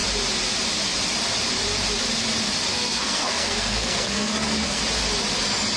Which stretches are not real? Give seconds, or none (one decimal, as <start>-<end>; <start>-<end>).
2.7-4.8